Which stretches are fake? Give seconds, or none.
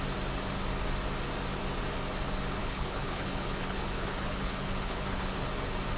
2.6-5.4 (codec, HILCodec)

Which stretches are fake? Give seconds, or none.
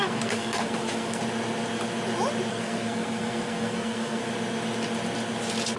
0.0-1.2 (codec, SNAC); 2.5-4.2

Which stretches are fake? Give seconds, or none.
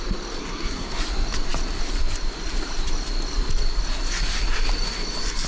0.4-1.0 (codec, SNAC)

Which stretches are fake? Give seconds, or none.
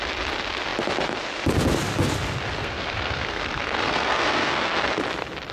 2.6-5.0 (codec, SNAC)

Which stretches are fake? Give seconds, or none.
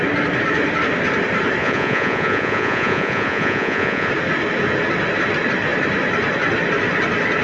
1.6-4.1 (vocoder, Vocos)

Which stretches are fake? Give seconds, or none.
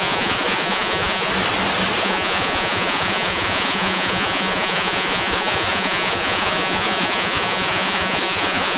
0.0-1.3 (vocoder, Vocos); 2.0-8.8